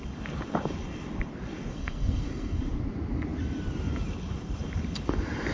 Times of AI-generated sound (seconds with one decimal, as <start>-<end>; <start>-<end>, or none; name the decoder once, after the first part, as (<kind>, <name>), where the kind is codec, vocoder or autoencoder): 1.7-2.6 (codec, SNAC)